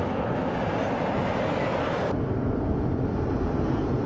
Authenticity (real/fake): real